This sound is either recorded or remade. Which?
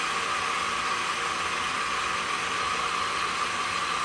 recorded